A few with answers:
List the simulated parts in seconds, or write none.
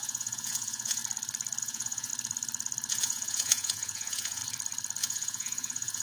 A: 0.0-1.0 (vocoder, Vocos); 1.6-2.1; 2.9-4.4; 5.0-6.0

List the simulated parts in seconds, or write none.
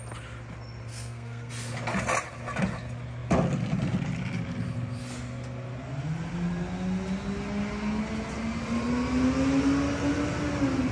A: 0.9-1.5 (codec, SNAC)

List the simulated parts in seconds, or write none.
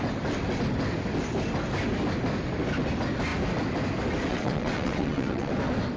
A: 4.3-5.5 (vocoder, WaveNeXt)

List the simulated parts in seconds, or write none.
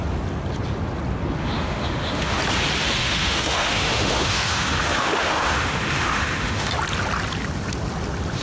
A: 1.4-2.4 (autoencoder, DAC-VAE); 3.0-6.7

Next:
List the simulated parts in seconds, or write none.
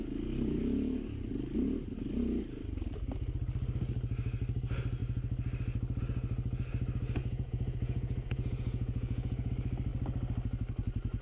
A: 7.2-9.5 (vocoder, Vocos)